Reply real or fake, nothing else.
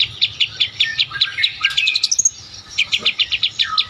real